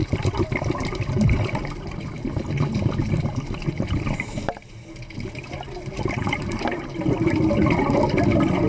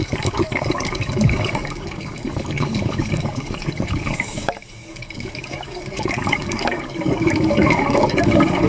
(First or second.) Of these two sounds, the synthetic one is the second